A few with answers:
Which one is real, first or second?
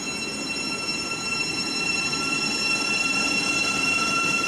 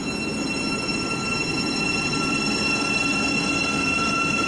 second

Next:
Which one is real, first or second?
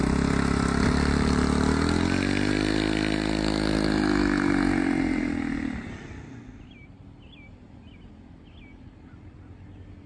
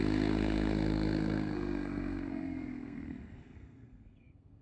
first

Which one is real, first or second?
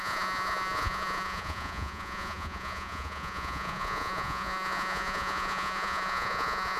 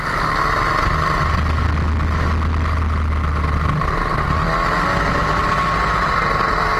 second